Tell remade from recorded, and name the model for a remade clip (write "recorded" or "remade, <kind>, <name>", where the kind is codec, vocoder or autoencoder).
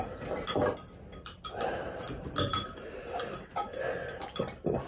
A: recorded